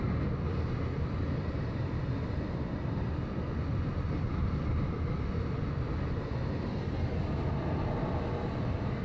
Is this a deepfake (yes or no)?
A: no